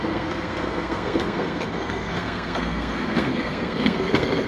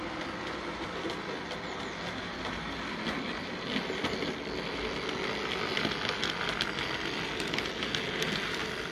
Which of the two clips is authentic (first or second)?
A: second